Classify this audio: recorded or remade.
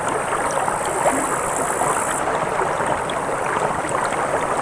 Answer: recorded